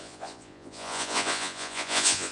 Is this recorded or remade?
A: remade